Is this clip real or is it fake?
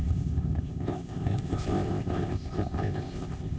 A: fake